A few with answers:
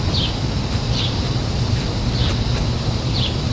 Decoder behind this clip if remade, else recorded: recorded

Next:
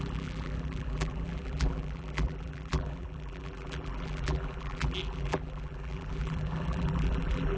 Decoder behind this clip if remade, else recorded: remade, vocoder, BigVGAN v2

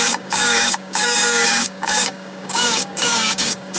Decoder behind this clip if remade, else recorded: remade, codec, DAC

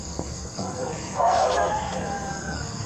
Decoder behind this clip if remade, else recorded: remade, codec, SNAC